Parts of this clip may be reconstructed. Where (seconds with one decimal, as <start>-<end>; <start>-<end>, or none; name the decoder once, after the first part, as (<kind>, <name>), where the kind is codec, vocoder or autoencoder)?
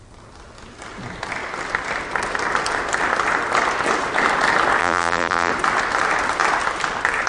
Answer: 4.8-5.5 (vocoder, BigVGAN v2)